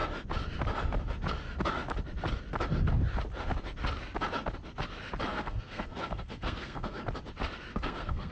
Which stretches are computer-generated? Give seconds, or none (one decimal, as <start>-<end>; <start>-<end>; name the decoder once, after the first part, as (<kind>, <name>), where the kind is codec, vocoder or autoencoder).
5.3-7.0 (codec, SNAC); 7.7-8.3